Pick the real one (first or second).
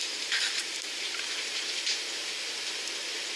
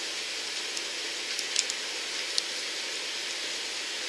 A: second